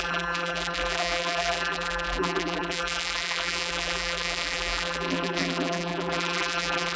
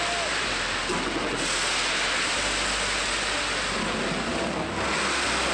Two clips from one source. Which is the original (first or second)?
second